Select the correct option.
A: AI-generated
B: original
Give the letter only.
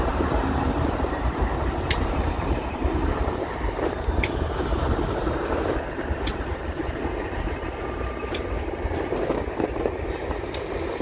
A